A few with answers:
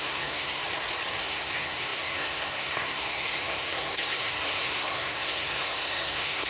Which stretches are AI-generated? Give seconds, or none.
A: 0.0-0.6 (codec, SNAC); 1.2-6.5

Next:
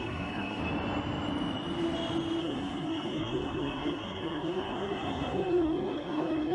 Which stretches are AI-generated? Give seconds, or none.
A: 0.0-0.6 (codec, SNAC); 2.4-6.5

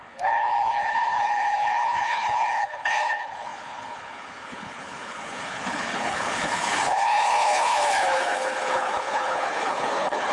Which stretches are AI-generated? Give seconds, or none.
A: 0.0-10.3 (codec, HILCodec)